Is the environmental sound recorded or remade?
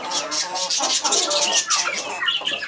recorded